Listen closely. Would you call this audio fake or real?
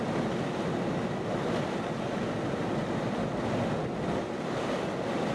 real